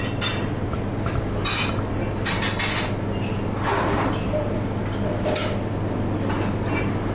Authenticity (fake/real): real